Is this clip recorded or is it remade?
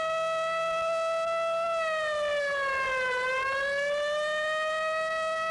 recorded